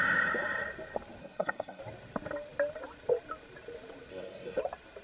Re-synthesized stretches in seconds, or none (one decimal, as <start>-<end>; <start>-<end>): 1.2-1.8; 4.1-4.6